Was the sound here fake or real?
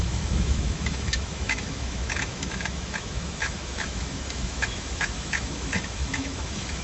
fake